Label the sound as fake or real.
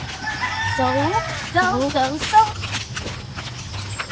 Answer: real